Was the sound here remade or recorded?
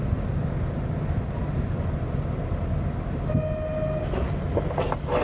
recorded